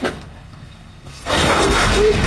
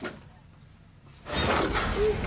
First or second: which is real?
second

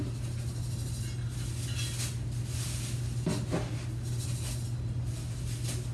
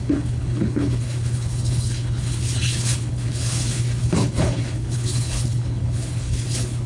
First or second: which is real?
first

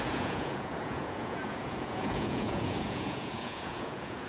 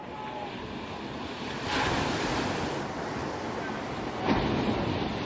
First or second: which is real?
second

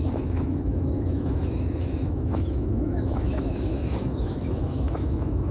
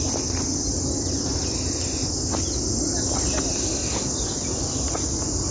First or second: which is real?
second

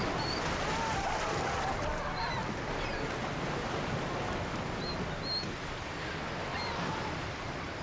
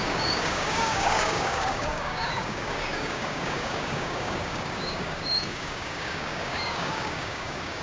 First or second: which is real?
first